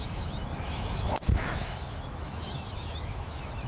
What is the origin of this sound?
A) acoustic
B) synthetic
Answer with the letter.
B